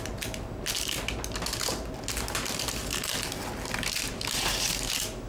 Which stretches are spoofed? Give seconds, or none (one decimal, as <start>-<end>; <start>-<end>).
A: none